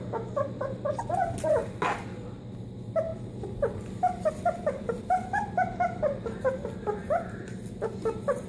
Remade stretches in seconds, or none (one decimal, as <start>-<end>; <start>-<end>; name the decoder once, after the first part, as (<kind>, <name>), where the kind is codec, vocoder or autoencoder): 3.1-6.5 (vocoder, BigVGAN v2)